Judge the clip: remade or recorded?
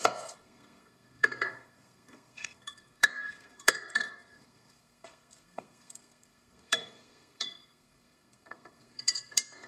remade